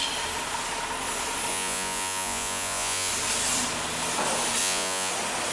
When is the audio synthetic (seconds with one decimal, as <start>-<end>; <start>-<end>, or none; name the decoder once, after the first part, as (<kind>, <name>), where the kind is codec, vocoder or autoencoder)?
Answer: 1.5-3.1 (vocoder, Vocos); 4.6-5.1